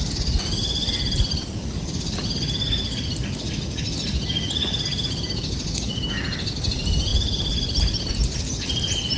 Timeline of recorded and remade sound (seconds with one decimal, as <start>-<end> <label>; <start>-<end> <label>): 0.0-9.2 recorded